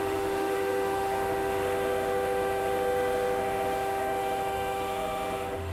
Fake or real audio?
fake